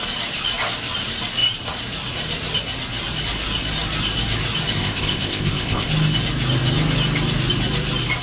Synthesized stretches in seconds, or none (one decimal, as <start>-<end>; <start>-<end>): 4.8-5.9